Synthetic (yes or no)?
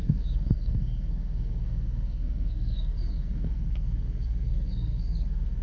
yes